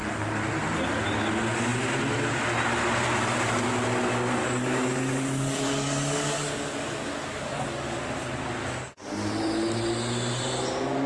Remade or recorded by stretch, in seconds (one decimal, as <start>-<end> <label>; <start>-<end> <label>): 0.0-4.4 recorded; 4.4-8.0 remade; 8.0-8.6 recorded; 8.6-9.3 remade; 9.3-11.1 recorded